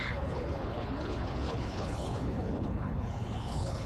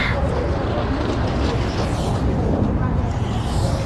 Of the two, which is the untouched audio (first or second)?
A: second